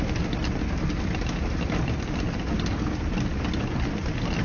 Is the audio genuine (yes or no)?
yes